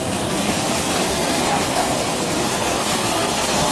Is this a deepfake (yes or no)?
yes